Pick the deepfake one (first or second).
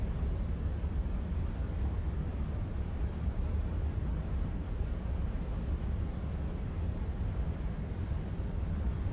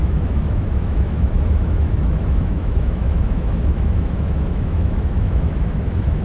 second